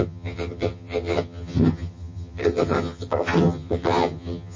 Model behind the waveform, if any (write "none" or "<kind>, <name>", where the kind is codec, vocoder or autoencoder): vocoder, HiFi-GAN